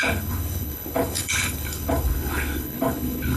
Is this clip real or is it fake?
fake